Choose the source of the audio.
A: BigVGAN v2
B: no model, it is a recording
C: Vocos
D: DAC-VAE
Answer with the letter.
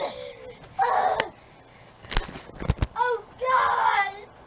B